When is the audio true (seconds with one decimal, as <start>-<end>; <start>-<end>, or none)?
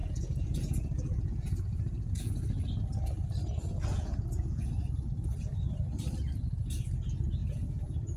2.3-3.9; 4.7-7.4